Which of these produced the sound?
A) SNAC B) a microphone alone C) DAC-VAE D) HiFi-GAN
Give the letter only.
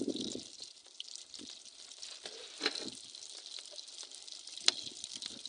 B